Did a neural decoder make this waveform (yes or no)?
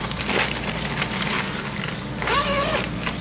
no